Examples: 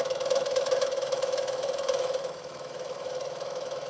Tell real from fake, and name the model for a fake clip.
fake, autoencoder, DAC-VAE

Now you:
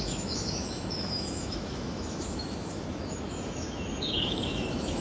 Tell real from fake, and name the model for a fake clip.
fake, autoencoder, DAC-VAE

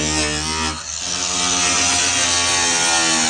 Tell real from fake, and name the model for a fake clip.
real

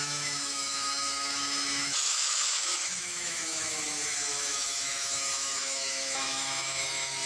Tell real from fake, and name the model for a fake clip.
fake, autoencoder, DAC-VAE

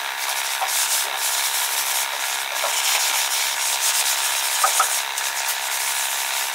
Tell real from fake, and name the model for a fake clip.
real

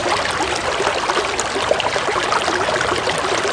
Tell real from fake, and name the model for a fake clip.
real